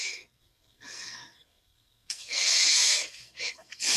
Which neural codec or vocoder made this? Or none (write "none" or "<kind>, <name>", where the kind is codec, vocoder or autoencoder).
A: codec, SNAC